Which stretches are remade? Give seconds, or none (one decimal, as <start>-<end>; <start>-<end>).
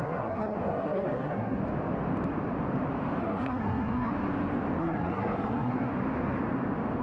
0.0-1.6; 3.2-4.1; 4.8-5.9